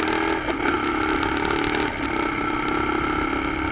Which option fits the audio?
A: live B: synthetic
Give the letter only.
A